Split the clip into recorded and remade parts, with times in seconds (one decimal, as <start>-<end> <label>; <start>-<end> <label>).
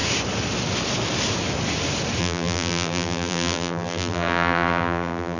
0.0-2.2 recorded; 2.2-5.4 remade